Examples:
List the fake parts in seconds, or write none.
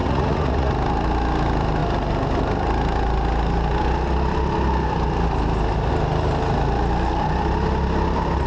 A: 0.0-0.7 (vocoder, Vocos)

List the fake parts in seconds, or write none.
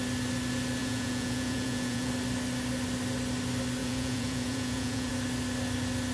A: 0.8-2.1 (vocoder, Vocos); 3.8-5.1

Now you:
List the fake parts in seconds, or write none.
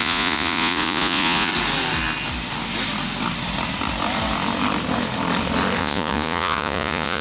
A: 0.0-1.5 (vocoder, Vocos); 5.8-7.2